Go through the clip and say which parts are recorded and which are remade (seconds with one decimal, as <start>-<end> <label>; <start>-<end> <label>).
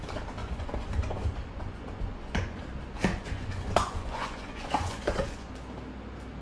0.0-0.4 recorded; 0.4-2.6 remade; 2.6-3.1 recorded; 3.1-5.5 remade; 5.5-6.4 recorded